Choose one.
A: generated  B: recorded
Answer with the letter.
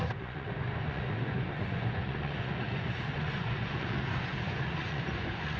A